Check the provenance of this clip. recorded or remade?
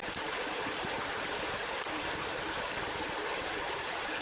recorded